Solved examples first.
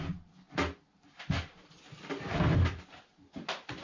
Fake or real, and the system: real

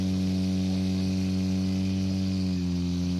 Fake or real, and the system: real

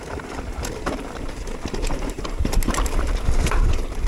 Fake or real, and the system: fake, vocoder, BigVGAN v2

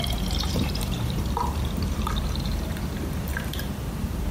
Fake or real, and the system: fake, vocoder, BigVGAN v2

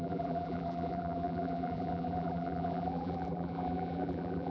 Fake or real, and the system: fake, vocoder, BigVGAN v2